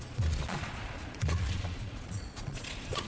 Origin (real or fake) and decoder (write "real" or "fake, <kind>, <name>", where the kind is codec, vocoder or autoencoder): fake, vocoder, Vocos